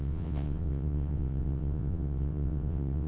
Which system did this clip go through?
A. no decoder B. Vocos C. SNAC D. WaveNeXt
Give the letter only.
D